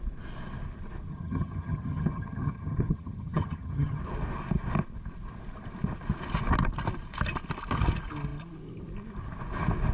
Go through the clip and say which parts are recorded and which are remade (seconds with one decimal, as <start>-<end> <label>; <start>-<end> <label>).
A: 0.0-1.1 recorded; 1.1-4.0 remade; 4.0-9.9 recorded